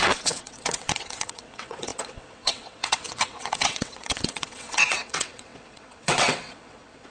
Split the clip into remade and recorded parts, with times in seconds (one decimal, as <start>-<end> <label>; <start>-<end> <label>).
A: 0.0-7.1 remade